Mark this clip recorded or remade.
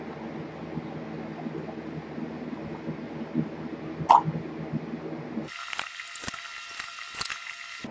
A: recorded